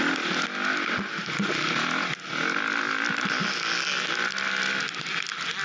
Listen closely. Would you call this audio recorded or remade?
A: recorded